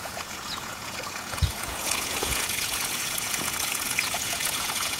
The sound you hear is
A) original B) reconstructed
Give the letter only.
B